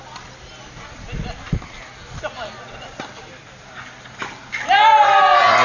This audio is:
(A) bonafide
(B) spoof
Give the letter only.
A